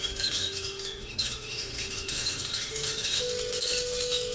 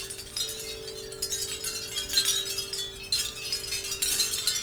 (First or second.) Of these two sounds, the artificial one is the first